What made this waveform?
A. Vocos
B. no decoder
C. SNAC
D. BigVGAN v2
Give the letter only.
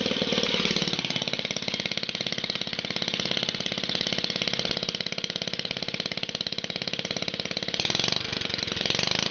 B